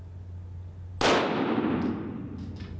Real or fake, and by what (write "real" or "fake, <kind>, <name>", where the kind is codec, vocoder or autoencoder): real